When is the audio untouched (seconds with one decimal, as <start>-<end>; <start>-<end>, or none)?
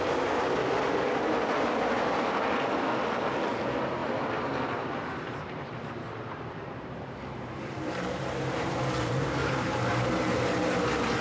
0.0-4.0; 8.8-9.4; 10.1-11.2